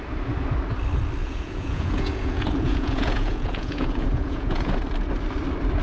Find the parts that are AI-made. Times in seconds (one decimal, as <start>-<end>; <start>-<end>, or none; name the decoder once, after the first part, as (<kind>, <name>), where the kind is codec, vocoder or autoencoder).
1.2-4.7 (vocoder, Vocos)